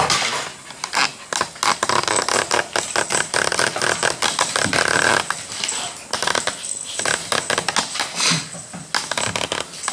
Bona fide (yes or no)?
yes